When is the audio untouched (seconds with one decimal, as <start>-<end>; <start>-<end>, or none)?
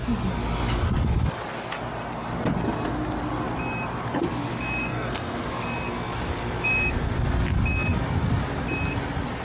0.0-4.9; 5.5-9.4